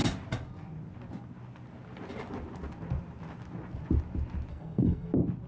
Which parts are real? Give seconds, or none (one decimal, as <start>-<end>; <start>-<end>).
0.0-4.5; 5.1-5.5